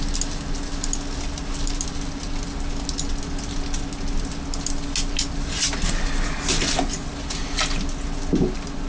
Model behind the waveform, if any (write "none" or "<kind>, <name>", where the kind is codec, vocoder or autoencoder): none